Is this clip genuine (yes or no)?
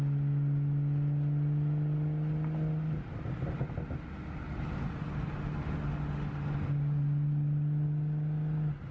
yes